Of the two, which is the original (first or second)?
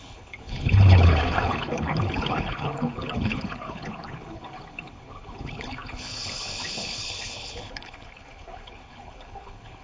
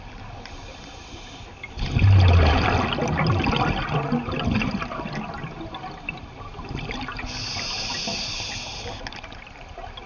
second